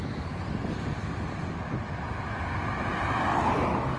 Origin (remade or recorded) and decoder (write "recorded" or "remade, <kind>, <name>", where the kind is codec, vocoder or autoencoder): recorded